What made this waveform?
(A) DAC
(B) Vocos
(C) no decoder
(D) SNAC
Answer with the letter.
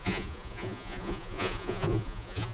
B